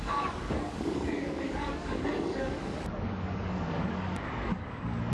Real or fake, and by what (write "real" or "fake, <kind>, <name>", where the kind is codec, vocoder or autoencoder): fake, codec, DAC